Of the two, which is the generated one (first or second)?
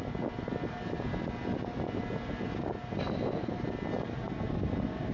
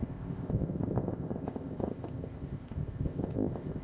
second